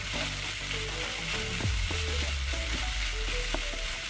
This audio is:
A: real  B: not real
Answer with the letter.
A